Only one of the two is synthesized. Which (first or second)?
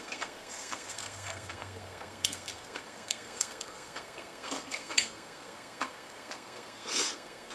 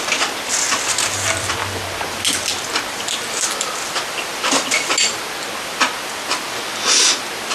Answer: first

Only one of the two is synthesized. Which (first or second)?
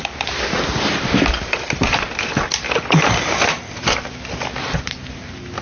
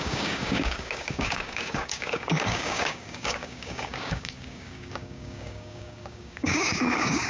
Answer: second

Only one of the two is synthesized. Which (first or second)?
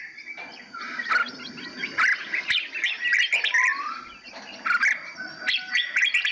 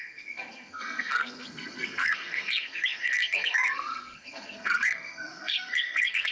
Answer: second